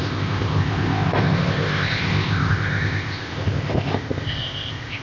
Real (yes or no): no